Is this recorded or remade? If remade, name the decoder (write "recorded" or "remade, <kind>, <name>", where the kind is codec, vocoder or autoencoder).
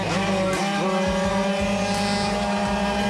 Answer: recorded